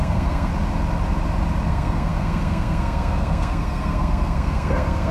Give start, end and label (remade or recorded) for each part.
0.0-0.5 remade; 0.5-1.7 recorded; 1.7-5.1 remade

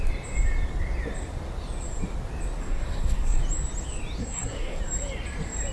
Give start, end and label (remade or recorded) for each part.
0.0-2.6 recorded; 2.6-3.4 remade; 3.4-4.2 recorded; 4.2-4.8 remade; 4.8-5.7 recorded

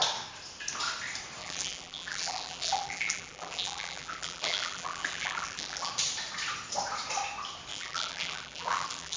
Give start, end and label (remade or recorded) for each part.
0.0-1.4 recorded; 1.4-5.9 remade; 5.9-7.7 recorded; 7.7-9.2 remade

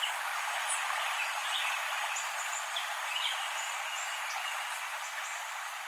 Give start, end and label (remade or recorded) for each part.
0.0-5.9 recorded

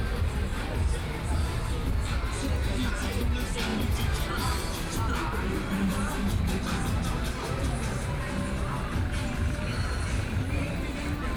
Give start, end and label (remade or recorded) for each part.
0.0-0.5 recorded; 0.5-1.7 remade; 1.7-3.7 recorded; 3.7-8.3 remade; 8.3-9.2 recorded; 9.2-10.7 remade; 10.7-11.4 recorded

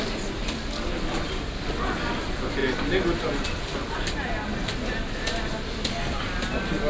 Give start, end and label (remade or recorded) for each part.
0.0-6.9 recorded

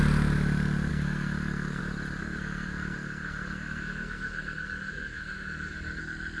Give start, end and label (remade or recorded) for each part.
0.0-0.9 recorded; 0.9-1.8 remade; 1.8-2.2 recorded; 2.2-6.0 remade; 6.0-6.4 recorded

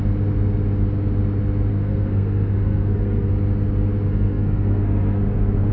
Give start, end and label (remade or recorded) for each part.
0.0-1.7 recorded; 1.7-3.3 remade; 3.3-4.1 recorded; 4.1-5.7 remade